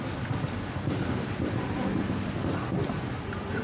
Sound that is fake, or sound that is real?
real